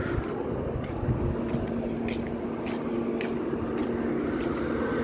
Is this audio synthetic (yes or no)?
no